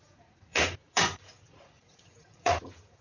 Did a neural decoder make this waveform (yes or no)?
yes